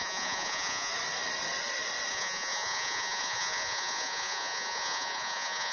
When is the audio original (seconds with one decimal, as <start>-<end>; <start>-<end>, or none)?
0.9-2.1